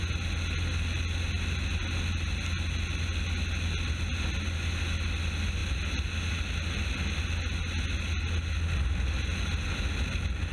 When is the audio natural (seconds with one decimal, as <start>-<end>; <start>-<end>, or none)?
0.0-10.5